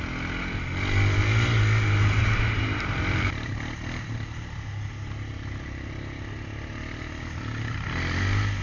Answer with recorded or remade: recorded